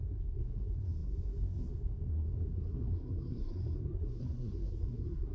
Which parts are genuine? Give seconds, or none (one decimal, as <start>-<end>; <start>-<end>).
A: none